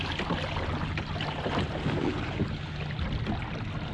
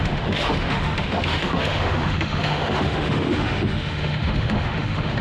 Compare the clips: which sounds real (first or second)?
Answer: first